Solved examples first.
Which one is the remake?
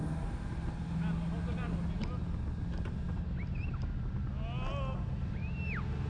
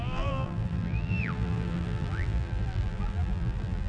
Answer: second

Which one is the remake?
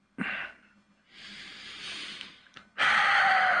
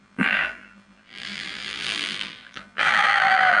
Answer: second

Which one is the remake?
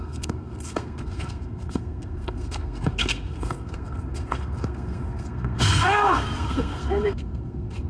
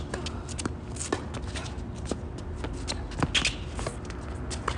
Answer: first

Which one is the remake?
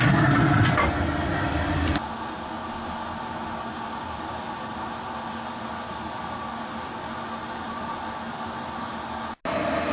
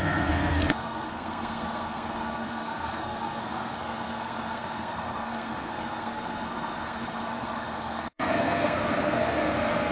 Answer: second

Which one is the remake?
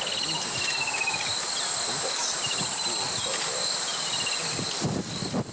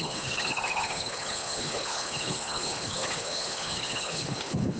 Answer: second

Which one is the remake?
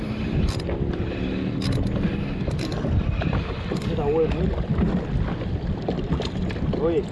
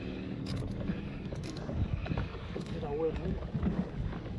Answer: second